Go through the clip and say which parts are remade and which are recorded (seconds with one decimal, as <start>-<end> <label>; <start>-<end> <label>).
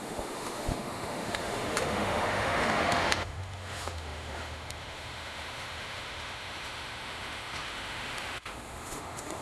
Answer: 0.0-9.4 remade